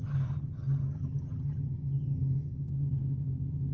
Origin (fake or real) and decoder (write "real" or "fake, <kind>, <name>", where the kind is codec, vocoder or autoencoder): fake, vocoder, HiFi-GAN